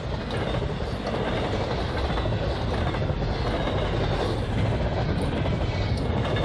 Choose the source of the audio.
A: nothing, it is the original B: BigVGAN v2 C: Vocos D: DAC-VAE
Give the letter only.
A